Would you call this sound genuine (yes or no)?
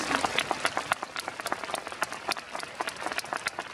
no